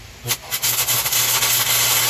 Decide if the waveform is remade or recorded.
recorded